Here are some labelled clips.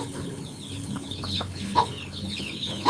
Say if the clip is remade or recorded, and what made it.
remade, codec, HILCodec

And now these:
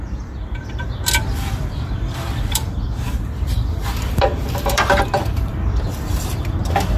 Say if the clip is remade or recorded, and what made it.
remade, vocoder, BigVGAN v2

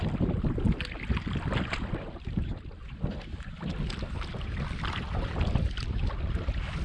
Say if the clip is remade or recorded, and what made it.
recorded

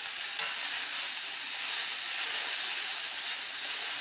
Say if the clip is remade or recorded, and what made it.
recorded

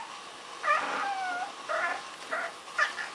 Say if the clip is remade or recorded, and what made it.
recorded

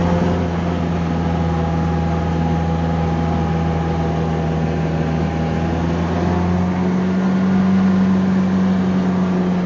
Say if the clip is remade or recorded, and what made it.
recorded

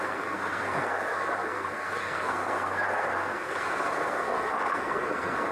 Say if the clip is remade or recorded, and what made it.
remade, codec, SNAC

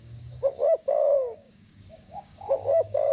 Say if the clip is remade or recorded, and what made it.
remade, codec, DAC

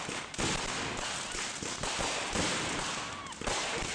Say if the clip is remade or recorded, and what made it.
recorded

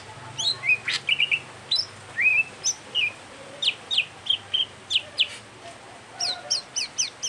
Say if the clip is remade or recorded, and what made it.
recorded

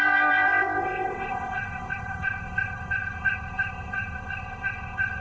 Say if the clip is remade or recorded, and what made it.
remade, codec, ZipCodec